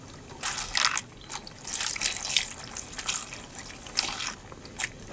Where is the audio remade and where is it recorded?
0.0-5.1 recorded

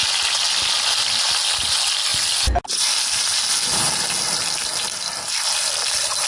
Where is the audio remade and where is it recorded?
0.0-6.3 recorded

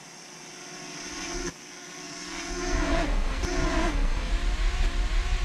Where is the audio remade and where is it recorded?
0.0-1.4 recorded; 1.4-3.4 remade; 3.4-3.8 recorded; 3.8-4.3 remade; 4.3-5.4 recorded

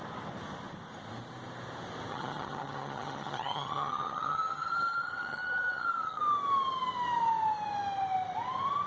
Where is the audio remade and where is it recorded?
0.0-2.1 recorded; 2.1-6.2 remade; 6.2-8.9 recorded